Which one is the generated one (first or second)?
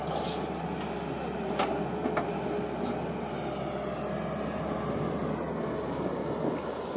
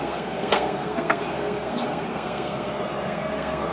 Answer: second